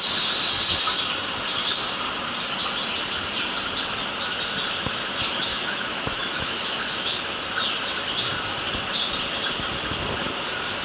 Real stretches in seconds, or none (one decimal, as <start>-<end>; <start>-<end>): 0.0-5.5; 6.8-10.8